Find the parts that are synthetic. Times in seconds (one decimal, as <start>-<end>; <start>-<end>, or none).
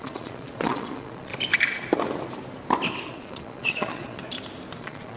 0.0-1.3; 3.1-4.2; 4.8-5.2